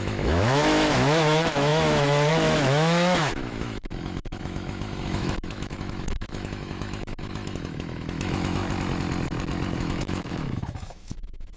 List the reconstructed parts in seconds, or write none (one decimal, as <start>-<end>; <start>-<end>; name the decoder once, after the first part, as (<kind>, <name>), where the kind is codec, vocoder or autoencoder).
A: 0.0-8.6 (autoencoder, DAC-VAE); 9.8-11.6